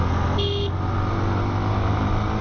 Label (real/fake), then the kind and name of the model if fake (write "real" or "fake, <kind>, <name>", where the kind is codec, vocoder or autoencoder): real